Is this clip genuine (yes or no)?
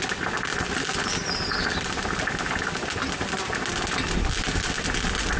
yes